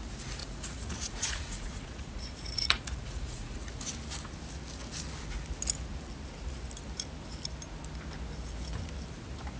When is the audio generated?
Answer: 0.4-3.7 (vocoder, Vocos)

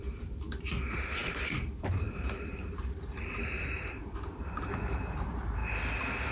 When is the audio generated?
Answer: 0.0-5.6 (vocoder, BigVGAN v2)